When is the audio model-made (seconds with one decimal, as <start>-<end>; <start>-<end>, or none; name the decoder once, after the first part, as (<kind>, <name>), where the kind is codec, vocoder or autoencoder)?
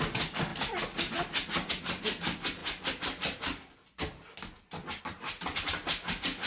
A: none